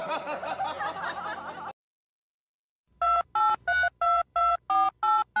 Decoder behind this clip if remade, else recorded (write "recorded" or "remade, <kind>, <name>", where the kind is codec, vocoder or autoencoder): recorded